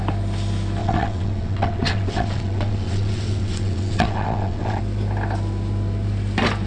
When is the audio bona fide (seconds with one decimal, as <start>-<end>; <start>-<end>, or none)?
0.0-0.8; 4.8-6.7